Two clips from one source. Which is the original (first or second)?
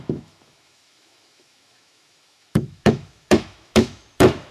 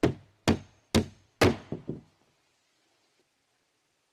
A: second